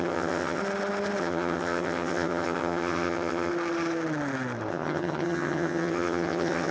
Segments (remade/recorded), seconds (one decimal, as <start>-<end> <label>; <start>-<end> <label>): 0.0-0.6 remade; 0.6-1.2 recorded; 1.2-3.5 remade; 3.5-4.7 recorded; 4.7-6.7 remade

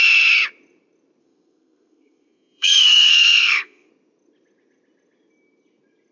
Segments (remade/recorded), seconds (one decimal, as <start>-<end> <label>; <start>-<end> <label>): 0.0-1.2 recorded; 1.2-3.9 remade; 3.9-6.1 recorded

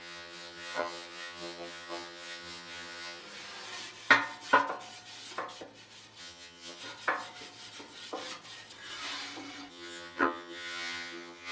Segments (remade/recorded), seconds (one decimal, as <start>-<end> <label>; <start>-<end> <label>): 0.0-3.2 remade; 3.2-6.2 recorded; 6.2-6.8 remade; 6.8-9.7 recorded; 9.7-11.5 remade

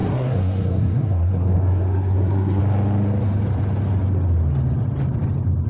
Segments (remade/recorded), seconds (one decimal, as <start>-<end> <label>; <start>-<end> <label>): 0.0-2.6 remade; 2.6-5.7 recorded

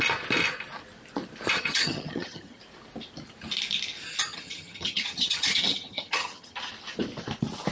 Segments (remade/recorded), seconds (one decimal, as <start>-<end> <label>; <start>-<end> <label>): 0.0-1.5 recorded; 1.5-2.6 remade; 2.6-4.3 recorded; 4.3-6.7 remade; 6.7-7.7 recorded

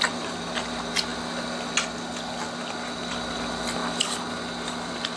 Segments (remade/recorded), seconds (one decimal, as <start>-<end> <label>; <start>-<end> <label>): 0.0-5.2 recorded

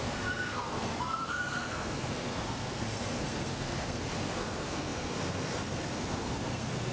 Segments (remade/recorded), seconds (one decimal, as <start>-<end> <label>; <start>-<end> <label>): 0.0-6.9 remade